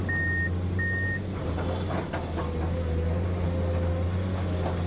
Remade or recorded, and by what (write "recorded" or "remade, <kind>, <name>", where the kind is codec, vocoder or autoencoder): recorded